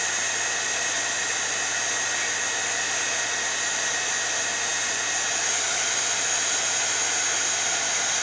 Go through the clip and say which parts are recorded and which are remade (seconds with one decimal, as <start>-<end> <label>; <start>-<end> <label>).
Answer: 0.0-8.2 recorded